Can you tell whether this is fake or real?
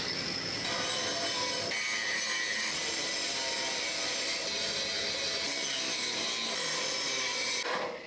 real